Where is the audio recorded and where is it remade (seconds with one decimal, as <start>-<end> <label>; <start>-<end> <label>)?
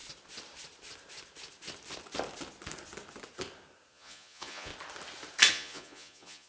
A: 0.0-3.9 recorded; 3.9-4.7 remade; 4.7-5.5 recorded; 5.5-6.5 remade